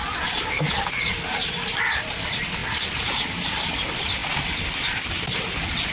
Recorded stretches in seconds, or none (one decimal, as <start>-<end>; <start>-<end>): 0.0-5.9